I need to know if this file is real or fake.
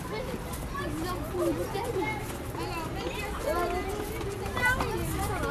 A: real